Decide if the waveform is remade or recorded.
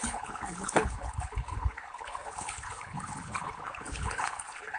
remade